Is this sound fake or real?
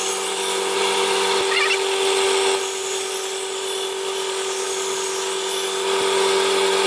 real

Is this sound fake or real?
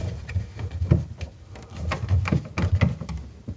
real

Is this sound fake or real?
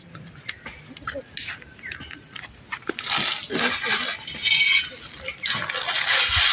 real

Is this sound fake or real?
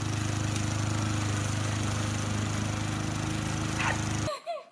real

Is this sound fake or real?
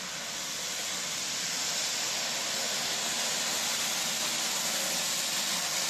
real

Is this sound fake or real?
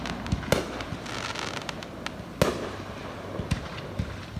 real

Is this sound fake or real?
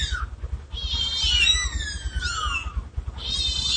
real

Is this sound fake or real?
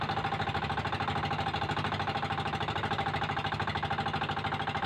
real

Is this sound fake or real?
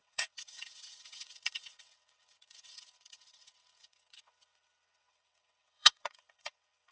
fake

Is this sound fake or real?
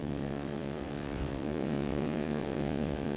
fake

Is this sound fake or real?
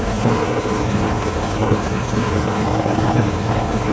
fake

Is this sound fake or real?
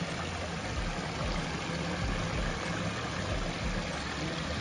real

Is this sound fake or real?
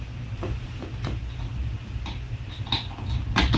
real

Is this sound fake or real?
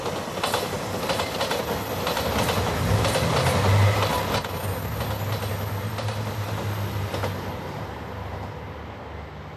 real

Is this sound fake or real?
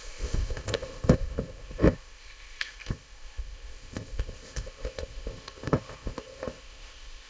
fake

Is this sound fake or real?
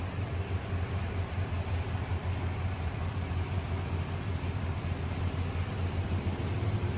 fake